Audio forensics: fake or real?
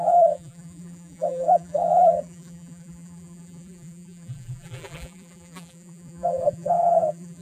fake